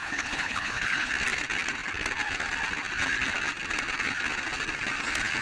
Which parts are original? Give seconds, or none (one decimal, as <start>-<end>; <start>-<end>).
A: 1.1-5.4